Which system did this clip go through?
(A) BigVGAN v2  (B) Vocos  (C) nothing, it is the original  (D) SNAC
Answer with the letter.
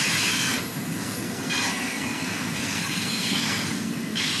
D